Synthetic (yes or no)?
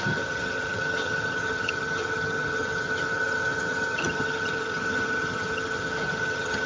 yes